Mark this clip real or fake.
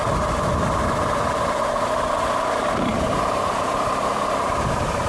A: fake